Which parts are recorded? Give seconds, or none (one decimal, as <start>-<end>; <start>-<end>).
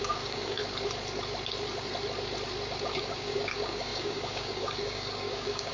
0.6-3.0